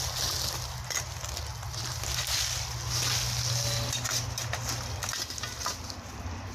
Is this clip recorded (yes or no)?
yes